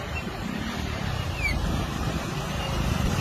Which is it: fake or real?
fake